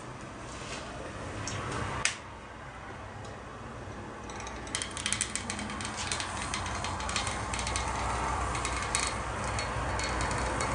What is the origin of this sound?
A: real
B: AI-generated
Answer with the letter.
A